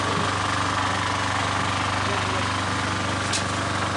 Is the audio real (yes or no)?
yes